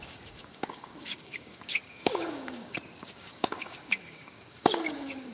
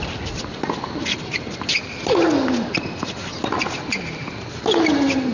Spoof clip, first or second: first